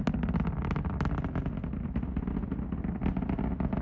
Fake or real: real